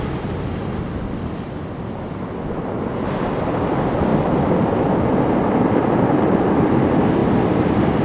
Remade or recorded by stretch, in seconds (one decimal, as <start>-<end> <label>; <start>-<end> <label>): 0.0-8.0 recorded

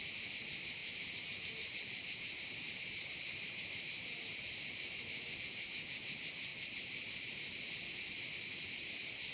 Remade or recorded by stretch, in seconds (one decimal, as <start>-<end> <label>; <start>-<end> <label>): 0.0-0.8 recorded; 0.8-5.4 remade; 5.4-9.3 recorded

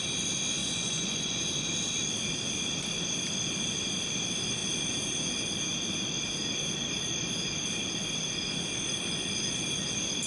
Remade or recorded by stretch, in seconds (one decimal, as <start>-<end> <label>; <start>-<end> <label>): 0.0-0.6 recorded; 0.6-1.4 remade; 1.4-10.3 recorded

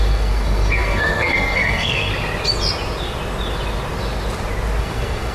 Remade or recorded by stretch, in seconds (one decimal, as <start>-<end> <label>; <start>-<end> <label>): 0.0-2.1 remade; 2.1-4.8 recorded; 4.8-5.3 remade

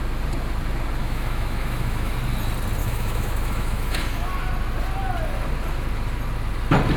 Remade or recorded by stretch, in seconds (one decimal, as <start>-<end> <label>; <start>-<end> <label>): 0.0-1.0 recorded; 1.0-2.1 remade; 2.1-2.8 recorded; 2.8-4.3 remade; 4.3-7.0 recorded

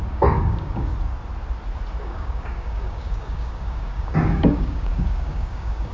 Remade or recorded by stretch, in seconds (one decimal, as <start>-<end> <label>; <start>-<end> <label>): 0.0-0.9 remade; 0.9-2.0 recorded; 2.0-5.9 remade

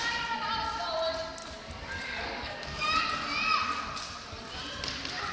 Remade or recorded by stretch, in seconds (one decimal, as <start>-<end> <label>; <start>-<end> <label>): 0.0-1.4 recorded; 1.4-3.0 remade; 3.0-5.3 recorded

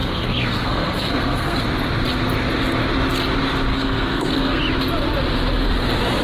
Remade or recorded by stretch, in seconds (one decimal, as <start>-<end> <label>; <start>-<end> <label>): 0.0-1.6 remade; 1.6-3.7 recorded; 3.7-4.6 remade; 4.6-6.2 recorded